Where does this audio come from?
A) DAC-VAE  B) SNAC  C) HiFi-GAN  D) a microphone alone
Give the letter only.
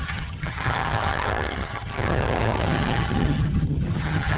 C